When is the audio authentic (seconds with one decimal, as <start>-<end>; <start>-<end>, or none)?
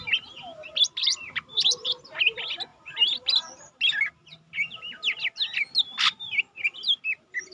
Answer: 0.0-1.0; 2.2-7.5